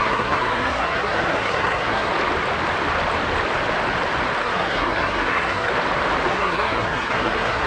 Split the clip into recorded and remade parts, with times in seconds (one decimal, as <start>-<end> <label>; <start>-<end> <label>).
0.0-2.1 remade; 2.1-4.4 recorded; 4.4-5.7 remade; 5.7-6.3 recorded; 6.3-7.7 remade